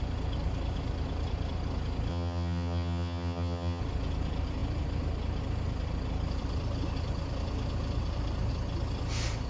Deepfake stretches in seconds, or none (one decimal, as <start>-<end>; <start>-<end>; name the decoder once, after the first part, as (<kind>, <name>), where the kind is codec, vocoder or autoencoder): 2.1-3.8 (vocoder, HiFi-GAN)